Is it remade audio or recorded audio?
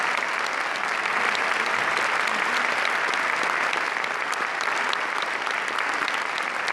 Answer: recorded